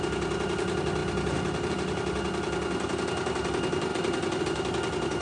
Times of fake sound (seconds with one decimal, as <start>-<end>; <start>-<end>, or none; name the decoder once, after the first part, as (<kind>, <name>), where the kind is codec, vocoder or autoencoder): none